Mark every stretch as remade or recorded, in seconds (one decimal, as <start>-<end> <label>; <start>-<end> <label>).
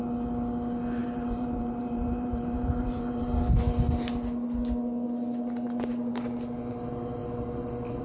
0.0-1.0 recorded; 1.0-3.6 remade; 3.6-8.0 recorded